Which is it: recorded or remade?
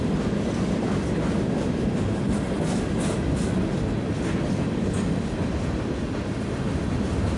recorded